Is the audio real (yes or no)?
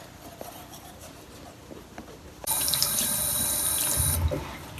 no